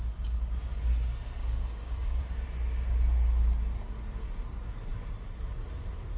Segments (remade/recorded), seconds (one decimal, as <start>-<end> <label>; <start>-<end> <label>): 0.0-1.4 recorded; 1.4-2.2 remade; 2.2-6.2 recorded